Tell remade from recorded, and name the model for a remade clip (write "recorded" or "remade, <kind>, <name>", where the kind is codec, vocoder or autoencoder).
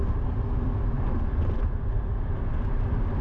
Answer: recorded